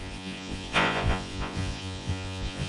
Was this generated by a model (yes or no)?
yes